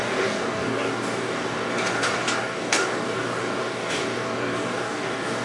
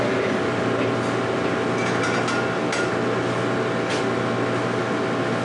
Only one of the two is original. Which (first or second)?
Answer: second